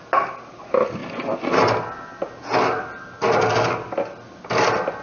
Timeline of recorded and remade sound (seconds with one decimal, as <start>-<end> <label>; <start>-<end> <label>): 0.0-5.0 recorded